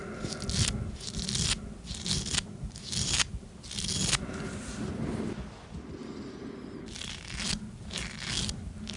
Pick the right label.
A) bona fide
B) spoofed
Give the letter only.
A